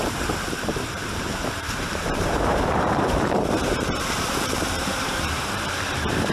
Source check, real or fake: fake